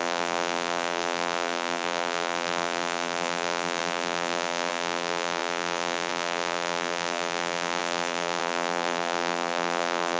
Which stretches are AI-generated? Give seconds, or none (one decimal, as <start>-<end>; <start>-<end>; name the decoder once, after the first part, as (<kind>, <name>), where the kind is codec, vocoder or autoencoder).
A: 0.0-10.2 (vocoder, BigVGAN v2)